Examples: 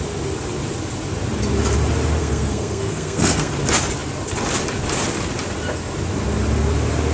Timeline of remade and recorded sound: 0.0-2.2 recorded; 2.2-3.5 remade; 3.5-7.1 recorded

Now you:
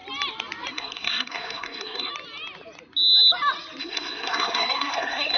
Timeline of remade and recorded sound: 0.0-0.7 recorded; 0.7-2.1 remade; 2.1-3.8 recorded; 3.8-5.4 remade

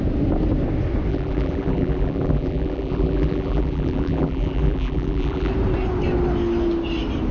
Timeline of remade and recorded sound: 0.0-1.1 recorded; 1.1-5.5 remade; 5.5-7.3 recorded

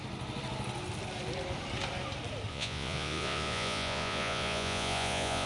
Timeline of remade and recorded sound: 0.0-2.5 recorded; 2.5-5.5 remade